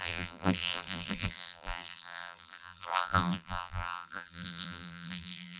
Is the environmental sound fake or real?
fake